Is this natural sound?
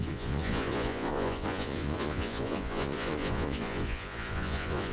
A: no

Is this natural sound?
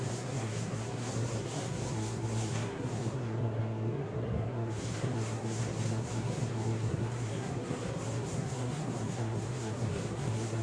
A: no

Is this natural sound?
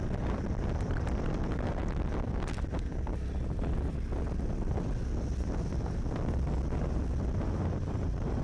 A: yes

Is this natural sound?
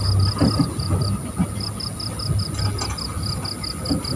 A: yes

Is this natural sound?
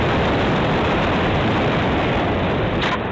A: no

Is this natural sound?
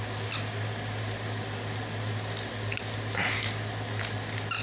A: yes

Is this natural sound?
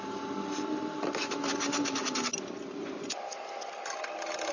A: yes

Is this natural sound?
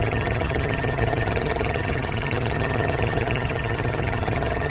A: no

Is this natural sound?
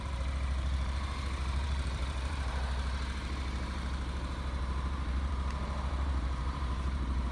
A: no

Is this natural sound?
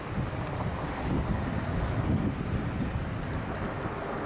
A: yes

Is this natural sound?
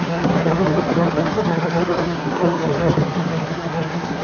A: no